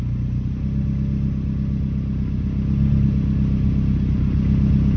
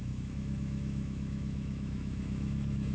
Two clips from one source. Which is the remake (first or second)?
second